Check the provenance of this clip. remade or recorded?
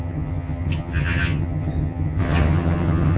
remade